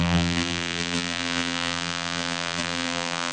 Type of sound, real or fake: fake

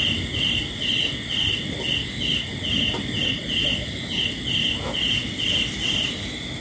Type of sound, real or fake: real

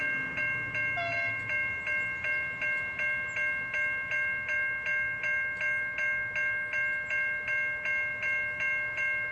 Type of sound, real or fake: real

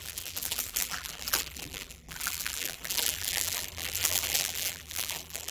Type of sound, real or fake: fake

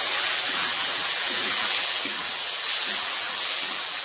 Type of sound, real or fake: fake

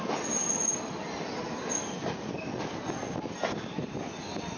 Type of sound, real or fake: real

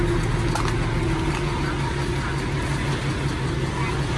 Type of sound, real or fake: real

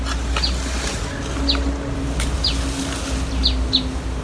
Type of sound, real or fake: real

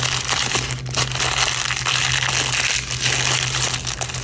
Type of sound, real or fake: real